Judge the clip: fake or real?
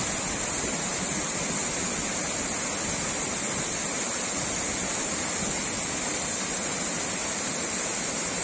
real